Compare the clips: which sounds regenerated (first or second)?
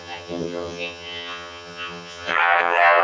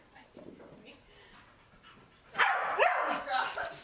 first